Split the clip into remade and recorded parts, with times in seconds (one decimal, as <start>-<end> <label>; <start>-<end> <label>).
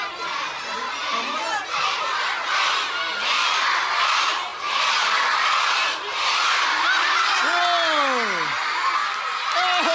0.0-9.9 recorded